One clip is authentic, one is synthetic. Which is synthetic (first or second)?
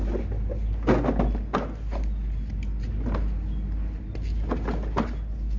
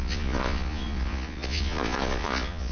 second